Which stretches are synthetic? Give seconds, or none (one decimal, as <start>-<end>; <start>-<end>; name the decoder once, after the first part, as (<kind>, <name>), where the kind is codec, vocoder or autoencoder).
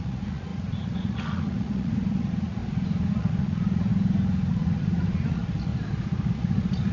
0.0-2.6 (vocoder, Vocos); 3.1-3.9; 4.5-5.7; 6.3-6.9